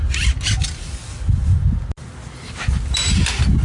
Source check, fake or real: real